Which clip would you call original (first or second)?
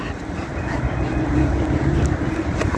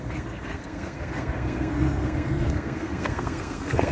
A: first